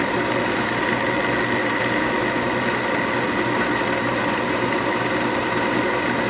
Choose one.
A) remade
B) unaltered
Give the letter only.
B